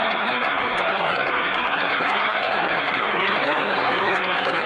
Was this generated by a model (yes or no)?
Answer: yes